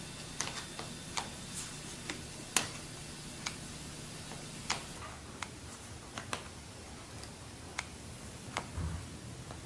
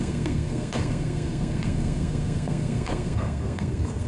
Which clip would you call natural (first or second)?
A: first